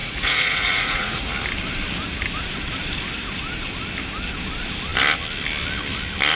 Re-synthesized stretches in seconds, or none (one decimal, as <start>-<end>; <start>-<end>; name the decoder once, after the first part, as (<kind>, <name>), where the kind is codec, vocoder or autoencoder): 0.0-1.3 (vocoder, Vocos)